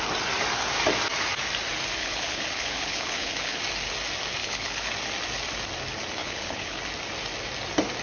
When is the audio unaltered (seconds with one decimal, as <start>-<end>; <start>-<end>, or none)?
0.0-2.0; 3.6-4.4; 4.9-6.2; 6.8-8.0